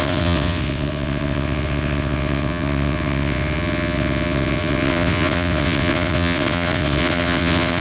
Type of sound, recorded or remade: remade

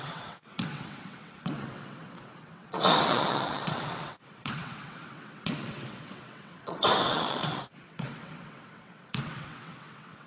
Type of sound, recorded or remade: remade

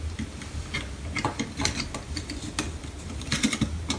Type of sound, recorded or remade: recorded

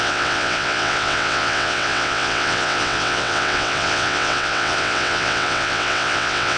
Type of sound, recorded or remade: remade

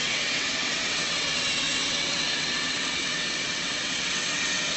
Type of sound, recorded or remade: remade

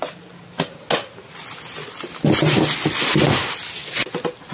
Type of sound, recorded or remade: recorded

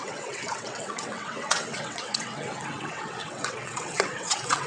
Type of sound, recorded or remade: remade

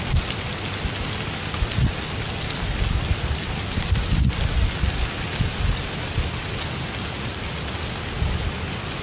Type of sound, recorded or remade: recorded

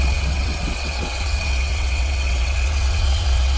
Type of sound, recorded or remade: remade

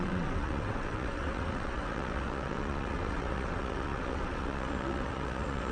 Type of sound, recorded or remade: remade